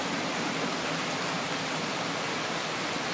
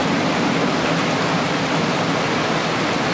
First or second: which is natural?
second